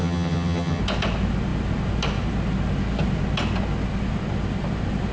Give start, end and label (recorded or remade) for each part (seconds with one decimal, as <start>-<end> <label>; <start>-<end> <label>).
0.0-0.8 remade; 0.8-5.1 recorded